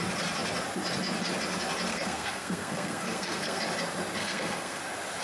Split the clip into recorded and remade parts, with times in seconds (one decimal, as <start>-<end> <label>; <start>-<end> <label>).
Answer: 0.0-1.9 recorded; 1.9-3.6 remade; 3.6-4.2 recorded; 4.2-4.8 remade; 4.8-5.2 recorded